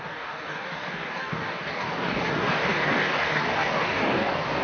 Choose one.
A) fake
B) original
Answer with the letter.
A